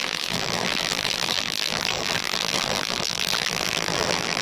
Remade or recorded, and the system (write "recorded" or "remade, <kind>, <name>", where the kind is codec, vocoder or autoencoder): remade, vocoder, BigVGAN v2